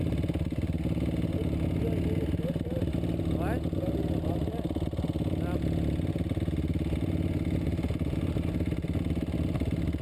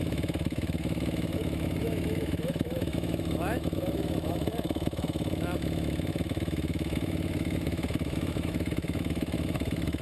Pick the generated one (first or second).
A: second